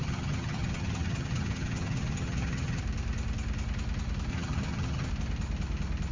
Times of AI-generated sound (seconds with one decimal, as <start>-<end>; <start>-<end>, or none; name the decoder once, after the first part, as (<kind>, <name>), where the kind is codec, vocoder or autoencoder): 0.0-2.8 (vocoder, HiFi-GAN); 4.3-5.1